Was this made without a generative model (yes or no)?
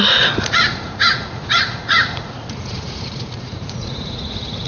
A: no